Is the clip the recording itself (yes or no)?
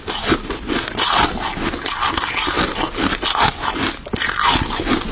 yes